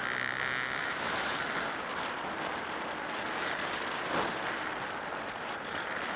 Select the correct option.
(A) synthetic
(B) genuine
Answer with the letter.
B